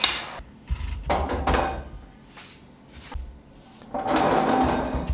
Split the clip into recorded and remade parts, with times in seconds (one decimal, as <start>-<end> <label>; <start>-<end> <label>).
0.0-5.1 recorded